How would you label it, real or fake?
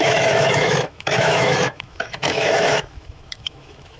fake